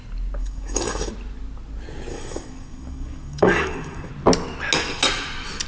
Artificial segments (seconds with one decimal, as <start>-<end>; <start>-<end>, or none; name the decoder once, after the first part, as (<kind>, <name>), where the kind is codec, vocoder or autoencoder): 0.4-1.1 (codec, DAC); 2.1-4.1